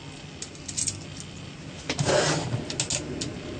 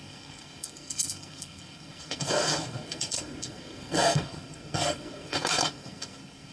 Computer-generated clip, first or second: second